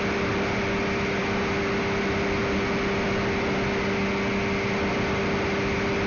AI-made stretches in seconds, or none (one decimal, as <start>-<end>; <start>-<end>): none